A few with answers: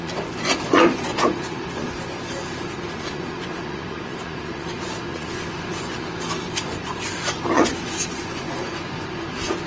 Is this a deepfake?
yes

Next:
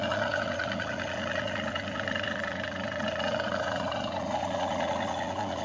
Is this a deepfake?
yes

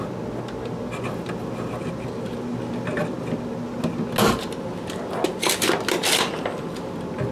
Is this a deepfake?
no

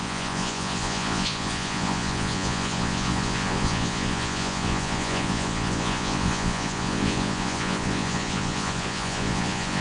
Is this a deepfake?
yes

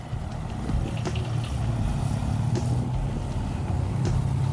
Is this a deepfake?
no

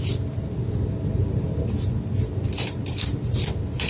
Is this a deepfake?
no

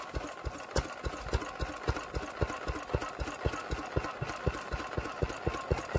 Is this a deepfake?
no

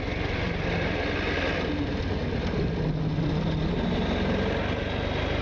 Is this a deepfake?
no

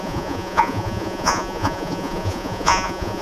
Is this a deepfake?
yes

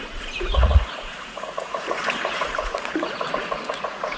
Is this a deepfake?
yes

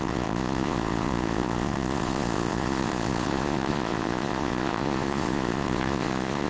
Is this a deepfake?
yes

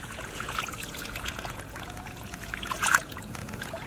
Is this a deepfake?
yes